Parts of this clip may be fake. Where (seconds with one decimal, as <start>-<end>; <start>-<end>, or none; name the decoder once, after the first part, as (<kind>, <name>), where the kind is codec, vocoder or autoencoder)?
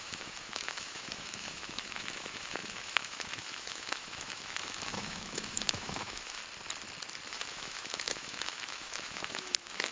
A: 0.0-6.4 (autoencoder, DAC-VAE); 7.3-9.9